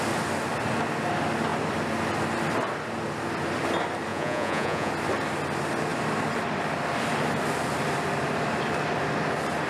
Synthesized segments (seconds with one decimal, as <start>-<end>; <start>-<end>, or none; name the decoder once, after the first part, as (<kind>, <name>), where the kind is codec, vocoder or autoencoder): 4.1-4.9 (vocoder, Vocos)